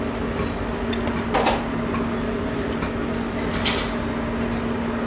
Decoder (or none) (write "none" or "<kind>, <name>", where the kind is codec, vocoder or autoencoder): none